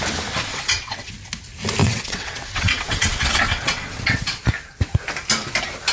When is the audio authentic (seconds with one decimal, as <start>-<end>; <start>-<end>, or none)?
0.0-0.5; 1.1-1.8; 4.4-5.9